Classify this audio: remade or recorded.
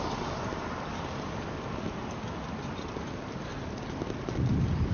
recorded